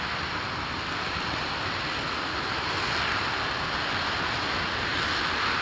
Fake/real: real